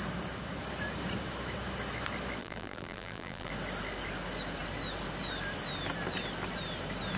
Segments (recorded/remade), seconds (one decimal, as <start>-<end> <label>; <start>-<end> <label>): 0.0-2.4 recorded; 2.4-3.5 remade; 3.5-7.2 recorded